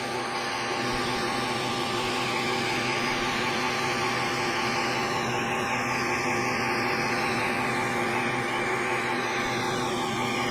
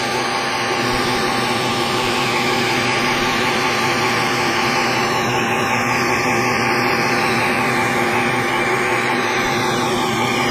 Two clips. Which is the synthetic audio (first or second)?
second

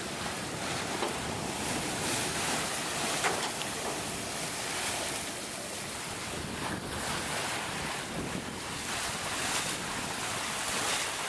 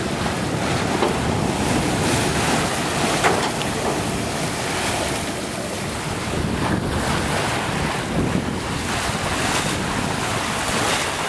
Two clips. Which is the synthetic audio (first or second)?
first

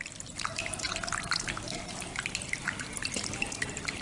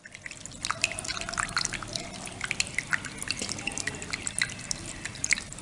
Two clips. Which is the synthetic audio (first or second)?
first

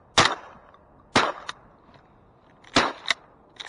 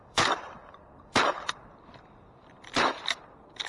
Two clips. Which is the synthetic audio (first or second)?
second